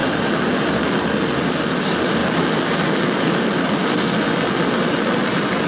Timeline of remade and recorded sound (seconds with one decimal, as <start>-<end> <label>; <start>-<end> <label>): 0.0-5.7 recorded